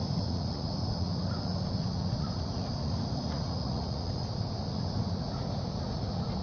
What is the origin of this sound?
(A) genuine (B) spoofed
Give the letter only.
B